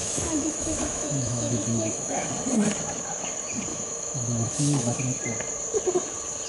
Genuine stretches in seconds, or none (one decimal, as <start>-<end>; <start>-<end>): 2.3-3.7; 5.0-6.5

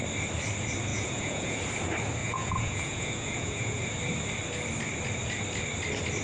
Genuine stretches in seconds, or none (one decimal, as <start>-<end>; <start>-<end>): 0.0-0.9; 1.6-2.2; 3.8-6.2

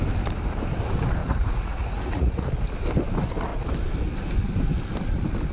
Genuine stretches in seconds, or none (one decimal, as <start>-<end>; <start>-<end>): 0.0-1.2; 2.5-5.5

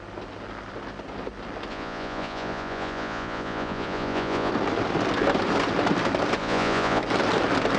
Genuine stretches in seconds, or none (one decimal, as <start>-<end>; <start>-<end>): 0.0-1.7; 4.5-6.4; 7.0-7.8

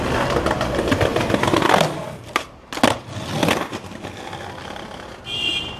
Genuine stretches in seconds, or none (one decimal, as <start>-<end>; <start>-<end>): 0.0-5.8